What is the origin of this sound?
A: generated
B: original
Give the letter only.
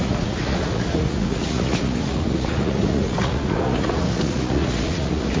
A